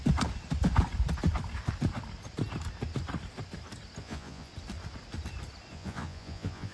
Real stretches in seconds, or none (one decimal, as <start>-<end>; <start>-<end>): 0.0-4.0; 4.5-5.7